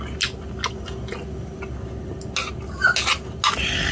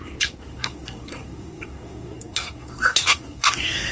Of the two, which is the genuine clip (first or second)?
first